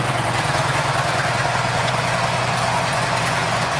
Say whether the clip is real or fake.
fake